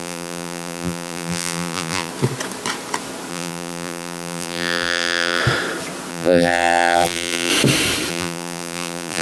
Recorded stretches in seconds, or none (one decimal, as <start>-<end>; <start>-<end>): 2.1-3.3; 5.4-6.1; 7.5-8.1